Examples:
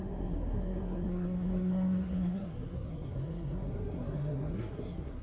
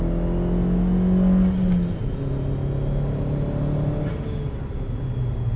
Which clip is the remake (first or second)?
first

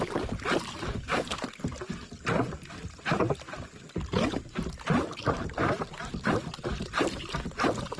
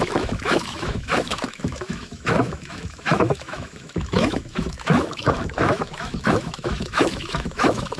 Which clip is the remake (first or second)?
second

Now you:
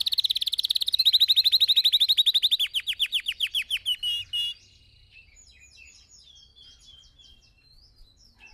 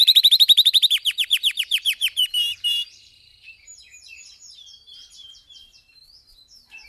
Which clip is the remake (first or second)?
second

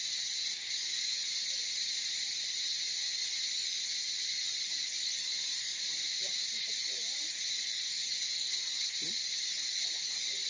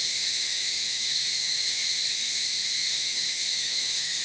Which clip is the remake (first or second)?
second